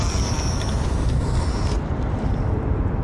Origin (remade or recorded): remade